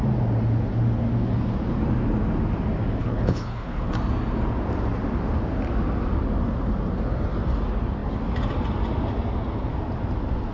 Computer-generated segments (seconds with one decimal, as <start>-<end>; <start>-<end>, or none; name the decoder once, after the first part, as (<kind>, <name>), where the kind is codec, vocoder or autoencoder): 3.0-3.9 (codec, HILCodec)